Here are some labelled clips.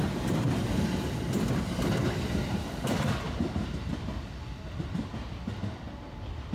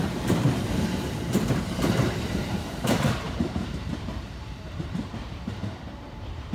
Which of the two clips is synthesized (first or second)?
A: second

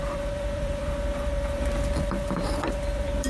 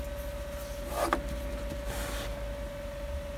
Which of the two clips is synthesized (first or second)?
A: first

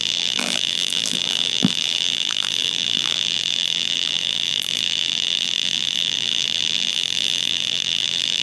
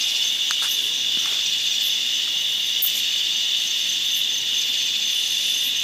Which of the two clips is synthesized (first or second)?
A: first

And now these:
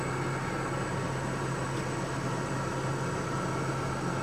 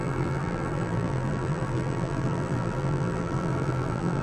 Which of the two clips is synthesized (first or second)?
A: second